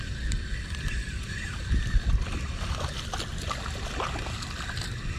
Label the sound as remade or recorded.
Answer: recorded